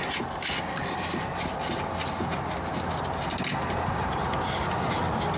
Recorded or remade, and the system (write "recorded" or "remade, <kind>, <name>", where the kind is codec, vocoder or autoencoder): recorded